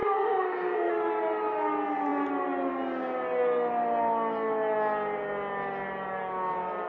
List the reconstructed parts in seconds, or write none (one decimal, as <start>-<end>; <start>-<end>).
0.0-0.9